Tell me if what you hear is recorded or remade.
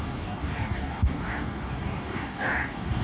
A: remade